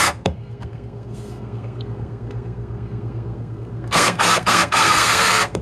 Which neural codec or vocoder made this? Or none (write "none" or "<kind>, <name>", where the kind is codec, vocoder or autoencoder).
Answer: codec, SNAC